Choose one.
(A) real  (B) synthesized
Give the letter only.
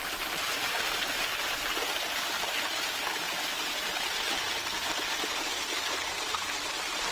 A